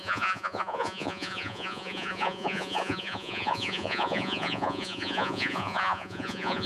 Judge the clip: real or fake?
fake